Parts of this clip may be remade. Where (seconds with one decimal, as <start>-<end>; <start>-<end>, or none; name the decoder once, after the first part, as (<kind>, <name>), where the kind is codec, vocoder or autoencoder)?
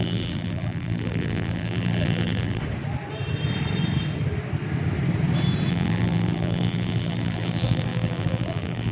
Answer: 0.0-2.6 (vocoder, BigVGAN v2); 5.7-8.9